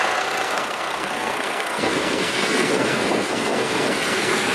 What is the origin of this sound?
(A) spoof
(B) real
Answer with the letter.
A